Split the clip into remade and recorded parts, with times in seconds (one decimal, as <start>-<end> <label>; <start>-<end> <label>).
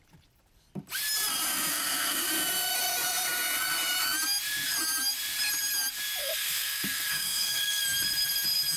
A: 0.0-1.7 recorded; 1.7-2.3 remade; 2.3-6.2 recorded; 6.2-7.8 remade; 7.8-8.8 recorded